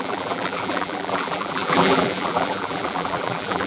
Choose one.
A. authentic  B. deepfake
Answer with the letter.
B